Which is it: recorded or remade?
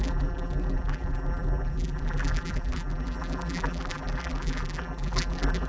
remade